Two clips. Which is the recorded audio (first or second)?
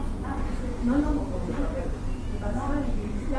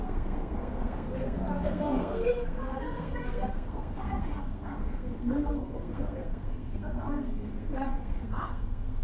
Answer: first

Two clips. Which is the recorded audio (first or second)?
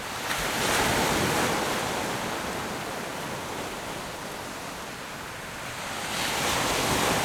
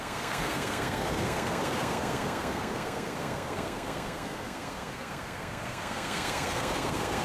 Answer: first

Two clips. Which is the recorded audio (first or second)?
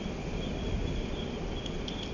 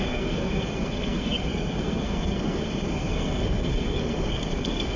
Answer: first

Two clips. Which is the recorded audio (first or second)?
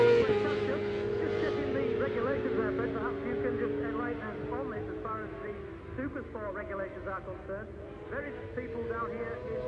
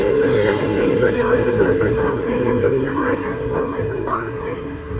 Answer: first